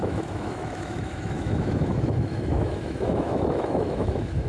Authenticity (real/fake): fake